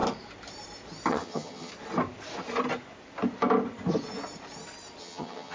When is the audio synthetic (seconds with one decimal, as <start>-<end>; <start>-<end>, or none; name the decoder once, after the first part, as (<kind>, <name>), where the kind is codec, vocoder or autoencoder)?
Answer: 1.1-1.7 (vocoder, HiFi-GAN); 5.0-5.5